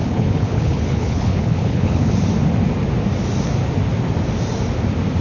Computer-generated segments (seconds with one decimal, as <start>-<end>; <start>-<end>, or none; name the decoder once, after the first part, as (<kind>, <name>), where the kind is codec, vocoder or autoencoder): 0.0-2.1 (codec, HILCodec)